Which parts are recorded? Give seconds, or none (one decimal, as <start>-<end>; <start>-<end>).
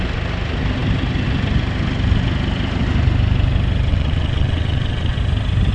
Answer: 0.0-3.9; 5.2-5.7